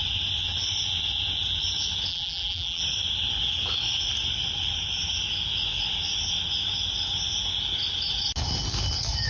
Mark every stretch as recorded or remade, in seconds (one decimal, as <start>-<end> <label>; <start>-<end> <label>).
0.0-2.1 recorded; 2.1-2.8 remade; 2.8-9.3 recorded